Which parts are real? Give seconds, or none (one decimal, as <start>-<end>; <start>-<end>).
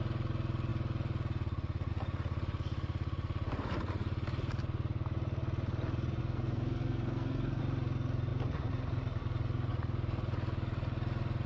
0.0-6.2; 7.6-11.5